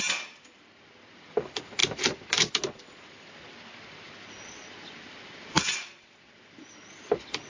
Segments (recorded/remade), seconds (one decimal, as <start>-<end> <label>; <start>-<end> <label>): 0.0-1.8 recorded; 1.8-2.5 remade; 2.5-7.5 recorded